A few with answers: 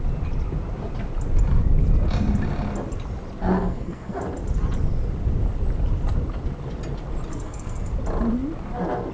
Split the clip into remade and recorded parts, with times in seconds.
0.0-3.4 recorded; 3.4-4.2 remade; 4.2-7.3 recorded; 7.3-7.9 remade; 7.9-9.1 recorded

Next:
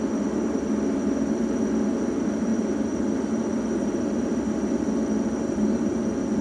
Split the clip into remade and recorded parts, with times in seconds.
0.0-2.5 recorded; 2.5-4.3 remade; 4.3-6.4 recorded

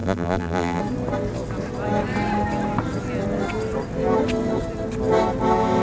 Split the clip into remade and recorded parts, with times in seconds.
0.0-0.8 remade; 0.8-5.8 recorded

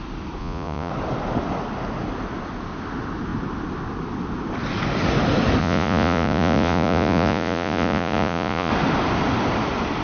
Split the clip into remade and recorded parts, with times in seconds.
0.0-0.4 recorded; 0.4-0.9 remade; 0.9-5.6 recorded; 5.6-8.7 remade; 8.7-10.0 recorded

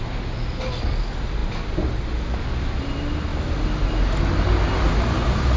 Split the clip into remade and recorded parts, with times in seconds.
0.0-5.6 recorded